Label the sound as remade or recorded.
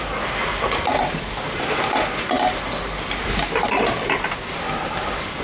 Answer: recorded